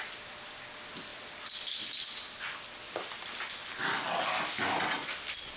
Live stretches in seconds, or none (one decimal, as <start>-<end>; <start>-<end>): 0.0-5.6